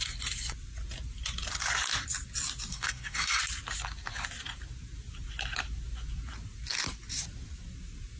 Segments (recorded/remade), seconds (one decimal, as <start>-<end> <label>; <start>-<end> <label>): 0.0-2.7 recorded; 2.7-3.4 remade; 3.4-8.2 recorded